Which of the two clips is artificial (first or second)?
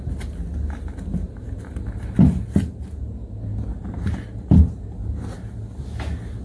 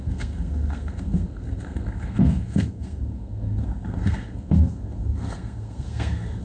second